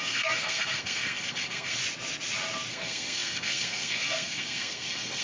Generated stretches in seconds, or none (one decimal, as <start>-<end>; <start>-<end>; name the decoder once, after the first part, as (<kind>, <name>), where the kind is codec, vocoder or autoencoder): 0.0-1.8 (codec, SNAC); 2.7-5.2